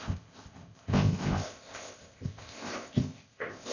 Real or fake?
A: fake